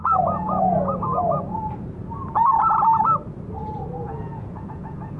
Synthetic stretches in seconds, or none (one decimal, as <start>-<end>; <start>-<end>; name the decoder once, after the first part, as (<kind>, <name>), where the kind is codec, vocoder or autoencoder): 0.0-0.9 (vocoder, Vocos); 4.0-5.2